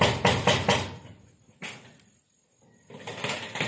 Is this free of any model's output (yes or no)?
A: yes